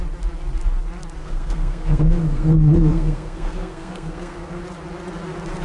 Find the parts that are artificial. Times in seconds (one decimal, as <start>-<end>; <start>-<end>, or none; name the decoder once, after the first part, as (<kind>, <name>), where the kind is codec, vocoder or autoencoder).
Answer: 1.2-4.6 (codec, SNAC)